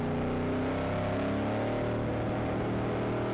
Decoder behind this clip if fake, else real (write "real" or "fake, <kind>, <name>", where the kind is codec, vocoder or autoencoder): real